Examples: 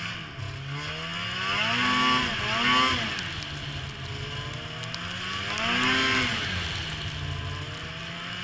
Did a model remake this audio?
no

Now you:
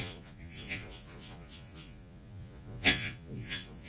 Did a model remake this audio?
yes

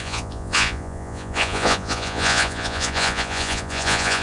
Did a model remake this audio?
yes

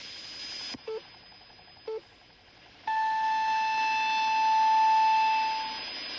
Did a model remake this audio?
no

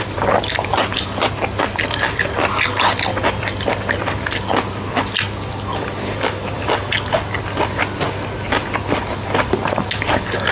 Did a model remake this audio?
no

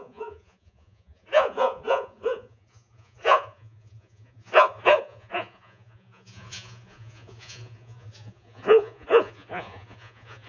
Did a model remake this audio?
yes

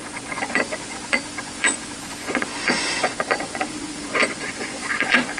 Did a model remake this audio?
yes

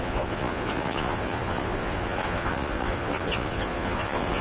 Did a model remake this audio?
yes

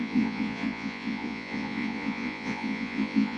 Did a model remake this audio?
yes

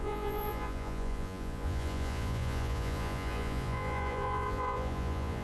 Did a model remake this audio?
yes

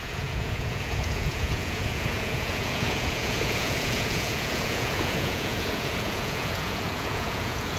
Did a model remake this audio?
yes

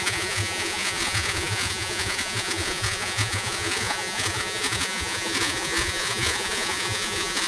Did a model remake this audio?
yes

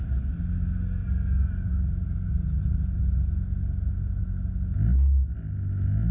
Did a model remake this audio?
no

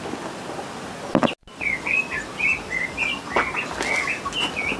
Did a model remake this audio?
no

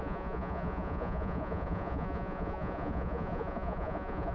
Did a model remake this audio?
yes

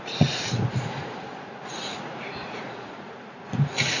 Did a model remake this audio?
yes